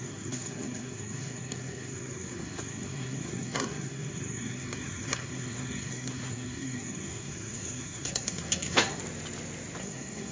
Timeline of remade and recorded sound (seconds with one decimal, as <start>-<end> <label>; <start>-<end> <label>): 0.0-9.0 remade; 9.0-9.8 recorded; 9.8-10.3 remade